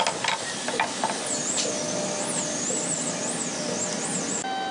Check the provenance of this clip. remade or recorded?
recorded